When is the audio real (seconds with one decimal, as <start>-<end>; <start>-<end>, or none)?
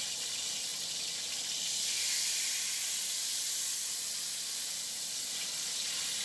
0.0-6.2